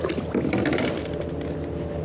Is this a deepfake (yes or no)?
no